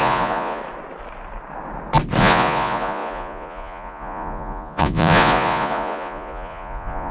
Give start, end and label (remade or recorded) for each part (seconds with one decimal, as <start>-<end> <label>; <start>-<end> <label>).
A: 0.0-0.6 remade; 0.6-2.2 recorded; 2.2-7.1 remade

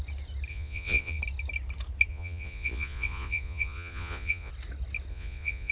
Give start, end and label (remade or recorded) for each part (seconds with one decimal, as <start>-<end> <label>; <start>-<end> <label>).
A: 0.0-0.5 recorded; 0.5-1.2 remade; 1.2-2.1 recorded; 2.1-4.5 remade; 4.5-5.1 recorded; 5.1-5.7 remade

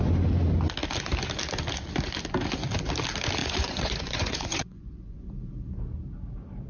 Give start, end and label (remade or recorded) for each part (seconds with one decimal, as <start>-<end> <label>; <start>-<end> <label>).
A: 0.0-3.4 recorded; 3.4-5.3 remade; 5.3-6.7 recorded

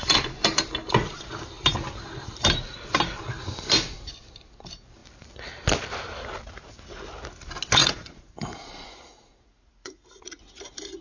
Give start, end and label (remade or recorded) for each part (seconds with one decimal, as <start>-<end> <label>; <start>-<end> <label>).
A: 0.0-7.8 recorded; 7.8-10.4 remade; 10.4-11.0 recorded